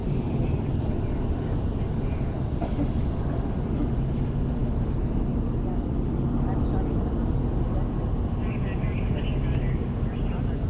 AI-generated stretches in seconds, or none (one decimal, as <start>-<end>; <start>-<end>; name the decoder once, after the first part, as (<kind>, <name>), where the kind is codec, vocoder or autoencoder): 0.0-3.2 (vocoder, BigVGAN v2)